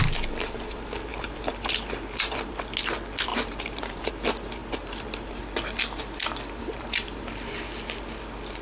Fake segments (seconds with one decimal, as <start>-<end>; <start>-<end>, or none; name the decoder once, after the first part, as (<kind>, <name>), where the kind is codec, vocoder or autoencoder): 1.1-2.5 (vocoder, BigVGAN v2); 3.3-4.1; 4.6-5.4; 6.6-7.5

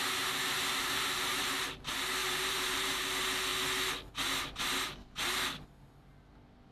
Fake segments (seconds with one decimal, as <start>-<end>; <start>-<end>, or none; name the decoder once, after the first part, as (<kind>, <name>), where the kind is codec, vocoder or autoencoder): 0.8-1.6 (vocoder, BigVGAN v2); 2.2-3.1

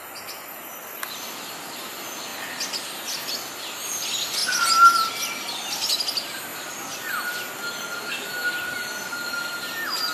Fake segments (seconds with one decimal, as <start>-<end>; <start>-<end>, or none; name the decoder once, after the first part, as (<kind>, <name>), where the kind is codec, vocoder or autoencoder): none

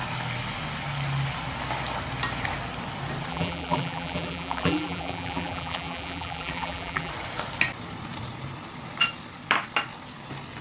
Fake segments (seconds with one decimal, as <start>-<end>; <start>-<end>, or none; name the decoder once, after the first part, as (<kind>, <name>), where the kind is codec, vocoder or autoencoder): 3.3-7.1 (vocoder, BigVGAN v2)

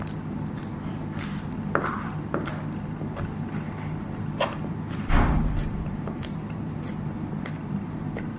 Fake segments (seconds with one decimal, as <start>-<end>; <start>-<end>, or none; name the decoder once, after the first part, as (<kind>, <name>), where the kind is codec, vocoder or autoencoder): 5.6-6.9 (vocoder, BigVGAN v2)

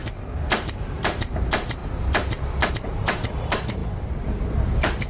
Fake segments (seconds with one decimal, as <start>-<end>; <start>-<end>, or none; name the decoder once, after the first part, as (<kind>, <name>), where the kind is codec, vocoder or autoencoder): 0.7-1.8 (vocoder, BigVGAN v2); 2.7-5.1

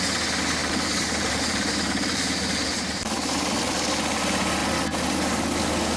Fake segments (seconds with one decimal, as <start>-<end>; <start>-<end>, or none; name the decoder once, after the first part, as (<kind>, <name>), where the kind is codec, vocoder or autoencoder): 0.6-3.5 (vocoder, BigVGAN v2)

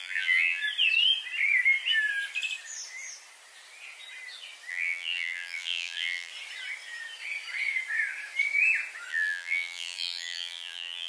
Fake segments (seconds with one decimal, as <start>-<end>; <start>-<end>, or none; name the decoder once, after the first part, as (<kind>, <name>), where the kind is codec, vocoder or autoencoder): 0.0-0.6 (vocoder, BigVGAN v2); 4.7-6.3; 9.1-11.1